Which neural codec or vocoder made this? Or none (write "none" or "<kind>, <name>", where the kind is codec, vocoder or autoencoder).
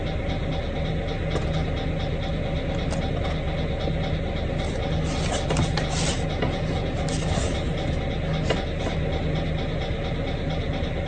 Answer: none